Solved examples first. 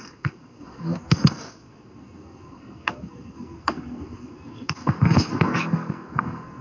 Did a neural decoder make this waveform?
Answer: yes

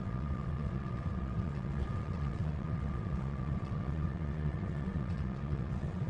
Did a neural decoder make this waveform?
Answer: yes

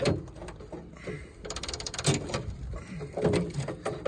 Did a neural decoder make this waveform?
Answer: no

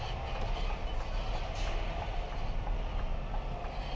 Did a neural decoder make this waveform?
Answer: no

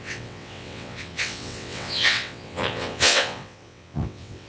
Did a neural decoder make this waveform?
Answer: yes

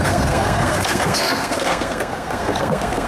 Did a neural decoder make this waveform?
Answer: yes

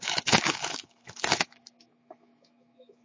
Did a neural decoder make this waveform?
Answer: yes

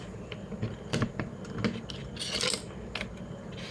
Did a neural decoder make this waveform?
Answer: no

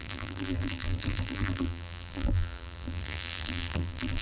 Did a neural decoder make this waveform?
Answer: yes